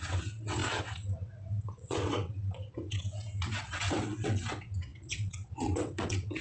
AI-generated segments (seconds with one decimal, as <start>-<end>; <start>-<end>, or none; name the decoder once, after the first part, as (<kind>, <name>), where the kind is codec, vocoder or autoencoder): 0.0-6.4 (vocoder, WaveNeXt)